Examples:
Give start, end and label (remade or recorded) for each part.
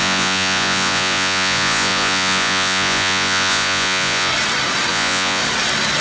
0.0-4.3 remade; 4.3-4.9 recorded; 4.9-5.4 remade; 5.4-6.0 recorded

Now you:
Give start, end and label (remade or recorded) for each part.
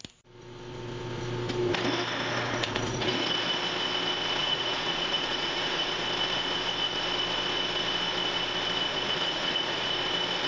0.0-2.4 recorded; 2.4-3.1 remade; 3.1-4.4 recorded; 4.4-6.0 remade; 6.0-8.9 recorded; 8.9-9.9 remade; 9.9-10.5 recorded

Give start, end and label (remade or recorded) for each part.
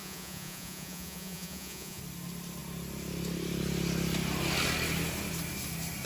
0.0-2.0 remade; 2.0-6.1 recorded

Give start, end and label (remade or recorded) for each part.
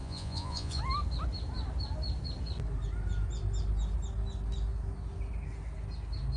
0.0-0.8 remade; 0.8-6.4 recorded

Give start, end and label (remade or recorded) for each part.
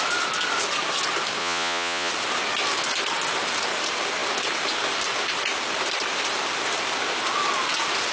0.0-1.4 recorded; 1.4-2.1 remade; 2.1-8.1 recorded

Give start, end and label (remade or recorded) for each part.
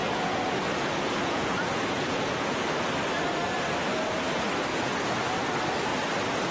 0.0-2.7 remade; 2.7-4.7 recorded; 4.7-5.3 remade; 5.3-6.5 recorded